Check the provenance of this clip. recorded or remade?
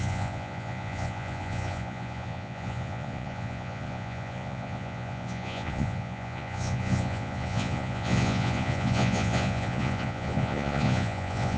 remade